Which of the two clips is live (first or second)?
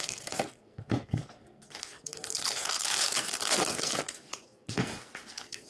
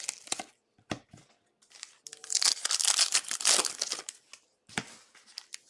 second